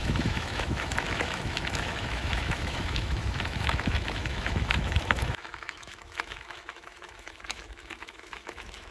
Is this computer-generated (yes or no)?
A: yes